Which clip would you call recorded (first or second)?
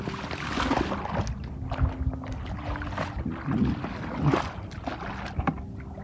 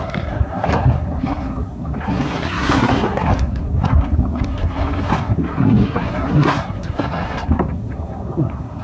first